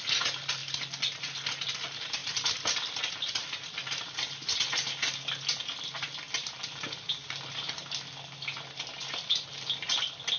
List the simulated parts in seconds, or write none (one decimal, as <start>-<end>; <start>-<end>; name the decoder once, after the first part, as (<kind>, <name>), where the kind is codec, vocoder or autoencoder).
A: none